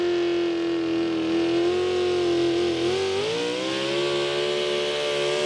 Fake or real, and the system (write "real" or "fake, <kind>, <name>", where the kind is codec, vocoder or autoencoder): real